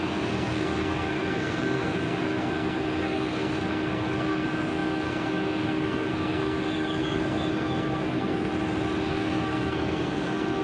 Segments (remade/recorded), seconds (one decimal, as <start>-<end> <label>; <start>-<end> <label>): 0.0-8.5 remade; 8.5-9.1 recorded; 9.1-10.6 remade